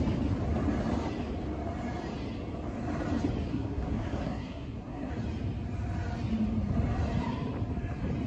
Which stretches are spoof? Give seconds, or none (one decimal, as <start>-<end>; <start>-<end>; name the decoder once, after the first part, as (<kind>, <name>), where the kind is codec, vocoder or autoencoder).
3.5-5.1 (codec, SNAC)